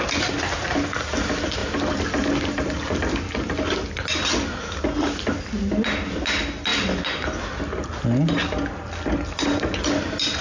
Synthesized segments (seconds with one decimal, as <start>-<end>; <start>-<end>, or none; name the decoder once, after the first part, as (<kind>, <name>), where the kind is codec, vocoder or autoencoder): none